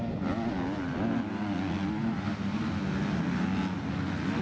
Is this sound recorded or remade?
recorded